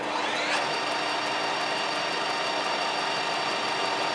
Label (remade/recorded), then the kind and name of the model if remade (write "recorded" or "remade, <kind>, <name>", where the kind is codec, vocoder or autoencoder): recorded